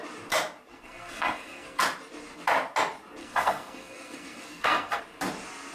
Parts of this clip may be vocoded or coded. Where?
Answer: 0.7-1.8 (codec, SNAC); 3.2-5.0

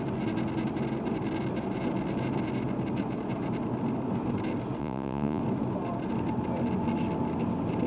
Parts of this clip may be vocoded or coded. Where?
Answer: 4.8-5.4 (vocoder, Vocos)

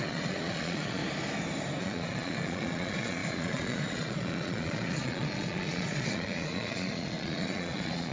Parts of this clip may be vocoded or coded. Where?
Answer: 0.0-1.0 (vocoder, Vocos); 1.8-8.1

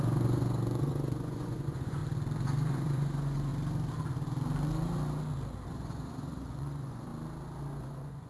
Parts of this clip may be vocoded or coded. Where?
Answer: 0.0-2.0 (vocoder, Vocos); 2.7-3.5; 5.7-7.1; 7.8-8.3